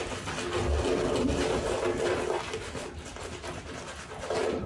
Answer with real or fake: real